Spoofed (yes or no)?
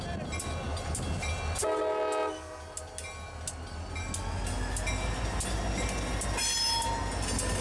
no